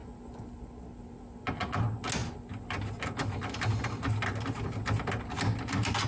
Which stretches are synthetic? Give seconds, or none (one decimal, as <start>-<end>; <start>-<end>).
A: none

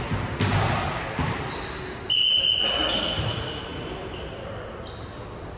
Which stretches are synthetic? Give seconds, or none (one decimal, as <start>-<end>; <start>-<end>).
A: none

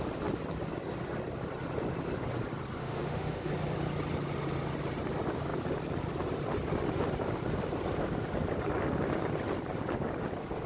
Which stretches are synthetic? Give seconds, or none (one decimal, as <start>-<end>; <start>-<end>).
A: 2.8-3.5

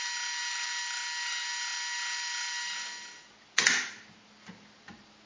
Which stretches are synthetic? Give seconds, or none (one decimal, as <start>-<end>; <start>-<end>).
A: none

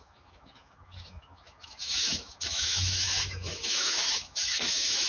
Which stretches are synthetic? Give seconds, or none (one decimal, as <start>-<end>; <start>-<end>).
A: 0.0-5.1

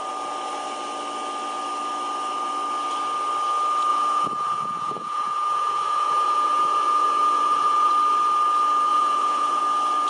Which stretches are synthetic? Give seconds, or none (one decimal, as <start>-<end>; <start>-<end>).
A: 3.9-7.9; 8.9-9.6